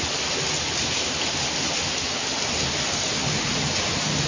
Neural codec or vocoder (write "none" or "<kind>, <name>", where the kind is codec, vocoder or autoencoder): none